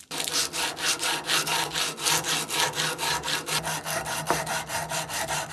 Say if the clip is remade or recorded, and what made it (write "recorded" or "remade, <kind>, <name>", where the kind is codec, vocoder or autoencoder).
recorded